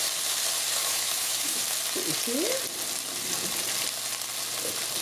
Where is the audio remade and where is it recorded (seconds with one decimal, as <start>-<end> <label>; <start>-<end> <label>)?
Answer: 0.0-0.8 recorded; 0.8-1.6 remade; 1.6-5.0 recorded